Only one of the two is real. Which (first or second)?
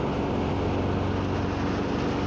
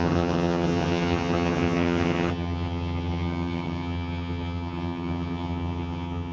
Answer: first